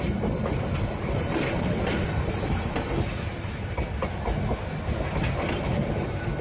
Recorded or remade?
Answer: recorded